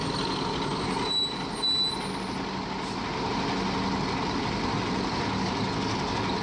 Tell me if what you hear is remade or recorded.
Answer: recorded